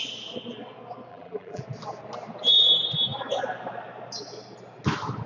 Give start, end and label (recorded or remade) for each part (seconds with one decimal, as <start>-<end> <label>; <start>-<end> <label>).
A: 0.0-1.1 recorded; 1.1-1.6 remade; 1.6-5.3 recorded